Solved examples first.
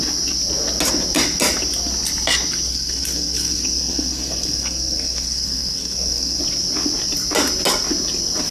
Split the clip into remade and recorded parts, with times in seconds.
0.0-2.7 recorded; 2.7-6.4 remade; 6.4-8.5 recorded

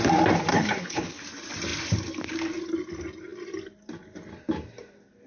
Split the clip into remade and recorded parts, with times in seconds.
0.0-0.5 recorded; 0.5-1.2 remade; 1.2-5.3 recorded

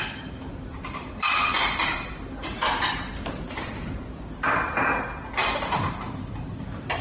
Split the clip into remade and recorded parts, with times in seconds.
0.0-4.2 remade; 4.2-5.4 recorded; 5.4-7.0 remade

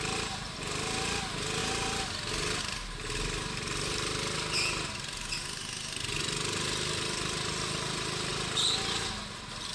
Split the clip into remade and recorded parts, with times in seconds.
0.0-9.7 recorded

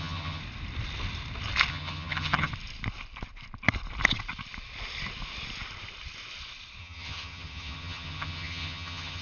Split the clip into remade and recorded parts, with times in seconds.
0.0-0.4 remade; 0.4-1.7 recorded; 1.7-2.5 remade; 2.5-6.8 recorded; 6.8-9.2 remade